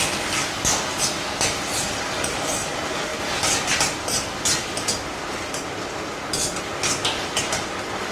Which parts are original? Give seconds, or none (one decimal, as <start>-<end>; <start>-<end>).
0.0-8.1